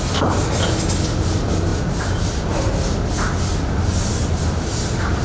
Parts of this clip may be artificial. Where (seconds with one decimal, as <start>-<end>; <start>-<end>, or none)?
none